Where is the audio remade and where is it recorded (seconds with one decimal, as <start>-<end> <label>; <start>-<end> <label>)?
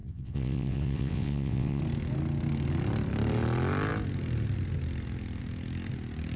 0.0-1.8 remade; 1.8-6.4 recorded